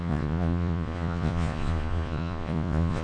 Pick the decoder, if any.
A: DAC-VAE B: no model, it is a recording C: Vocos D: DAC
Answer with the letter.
C